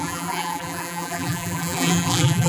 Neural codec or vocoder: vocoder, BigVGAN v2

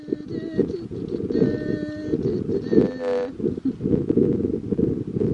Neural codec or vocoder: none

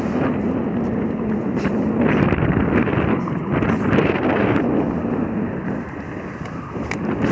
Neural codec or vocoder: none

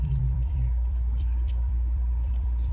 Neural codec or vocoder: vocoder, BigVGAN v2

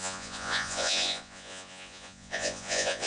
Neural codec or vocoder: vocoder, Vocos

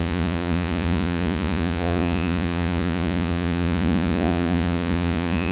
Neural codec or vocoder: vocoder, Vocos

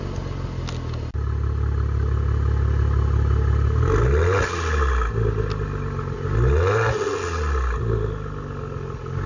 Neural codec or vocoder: none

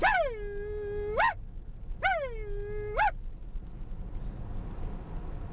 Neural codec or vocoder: none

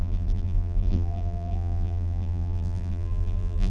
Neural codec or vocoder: vocoder, BigVGAN v2